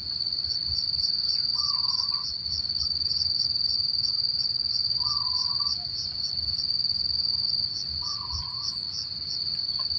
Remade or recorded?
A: recorded